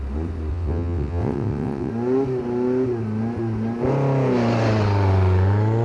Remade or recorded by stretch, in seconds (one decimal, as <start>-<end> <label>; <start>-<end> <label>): 0.0-0.5 recorded; 0.5-1.9 remade; 1.9-5.8 recorded